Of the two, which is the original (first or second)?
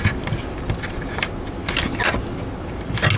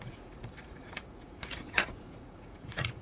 first